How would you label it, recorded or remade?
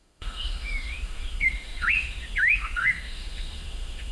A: remade